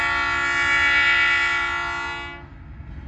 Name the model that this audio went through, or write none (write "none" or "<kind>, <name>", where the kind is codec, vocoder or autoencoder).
none